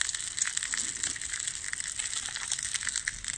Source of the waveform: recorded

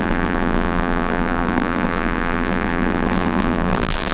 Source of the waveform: remade